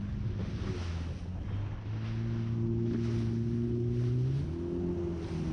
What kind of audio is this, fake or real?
real